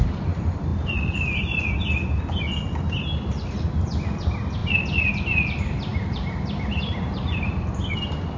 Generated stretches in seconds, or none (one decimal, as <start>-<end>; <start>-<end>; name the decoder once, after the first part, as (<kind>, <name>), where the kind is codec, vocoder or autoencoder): 5.9-7.8 (vocoder, BigVGAN v2)